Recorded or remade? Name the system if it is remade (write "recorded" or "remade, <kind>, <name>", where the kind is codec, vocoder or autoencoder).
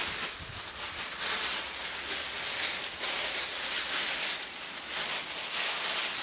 recorded